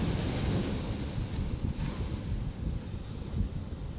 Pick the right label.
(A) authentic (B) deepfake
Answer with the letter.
A